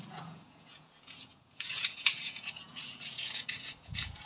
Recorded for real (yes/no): no